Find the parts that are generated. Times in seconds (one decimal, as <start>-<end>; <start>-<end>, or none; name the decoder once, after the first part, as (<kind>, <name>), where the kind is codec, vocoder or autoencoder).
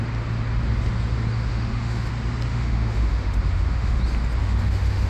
1.5-2.1 (autoencoder, DAC-VAE); 2.5-4.0; 4.4-5.1